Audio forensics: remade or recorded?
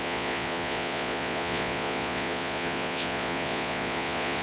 remade